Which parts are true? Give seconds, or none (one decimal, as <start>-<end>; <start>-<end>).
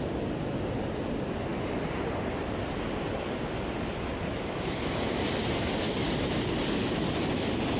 0.0-7.8